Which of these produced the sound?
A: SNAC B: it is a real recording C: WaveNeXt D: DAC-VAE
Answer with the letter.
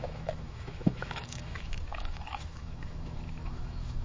D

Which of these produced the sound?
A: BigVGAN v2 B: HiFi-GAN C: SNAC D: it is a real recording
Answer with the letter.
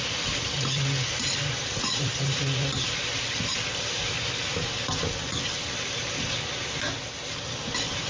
A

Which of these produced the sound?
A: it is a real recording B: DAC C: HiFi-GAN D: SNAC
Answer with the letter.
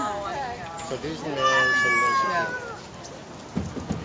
A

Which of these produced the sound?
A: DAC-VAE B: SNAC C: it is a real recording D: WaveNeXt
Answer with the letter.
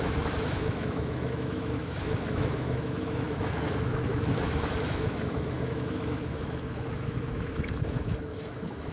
A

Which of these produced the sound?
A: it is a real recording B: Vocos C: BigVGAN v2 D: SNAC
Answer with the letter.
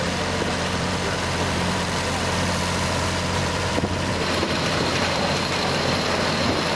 C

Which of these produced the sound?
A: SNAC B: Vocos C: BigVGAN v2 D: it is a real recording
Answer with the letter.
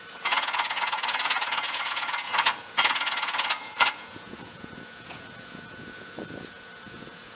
B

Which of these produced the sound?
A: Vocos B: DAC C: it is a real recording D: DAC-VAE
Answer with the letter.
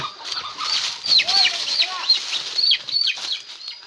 C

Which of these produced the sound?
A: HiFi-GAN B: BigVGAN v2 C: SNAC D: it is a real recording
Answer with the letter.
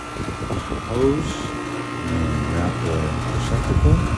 D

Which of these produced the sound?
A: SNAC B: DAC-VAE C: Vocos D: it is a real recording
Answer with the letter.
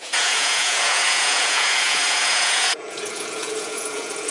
C